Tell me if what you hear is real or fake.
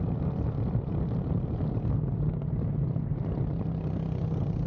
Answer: real